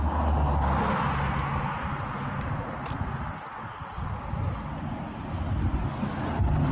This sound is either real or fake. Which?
real